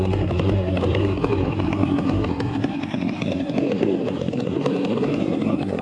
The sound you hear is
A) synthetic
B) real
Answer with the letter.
A